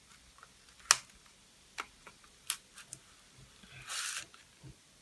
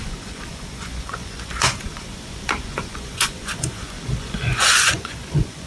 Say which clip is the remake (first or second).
second